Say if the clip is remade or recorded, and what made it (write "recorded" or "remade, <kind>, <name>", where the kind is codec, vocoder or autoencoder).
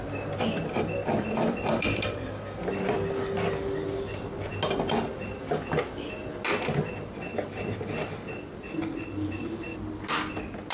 recorded